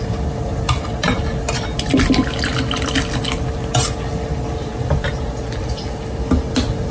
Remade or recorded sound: recorded